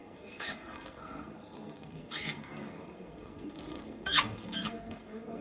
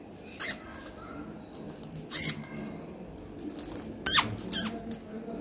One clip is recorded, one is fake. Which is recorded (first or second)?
second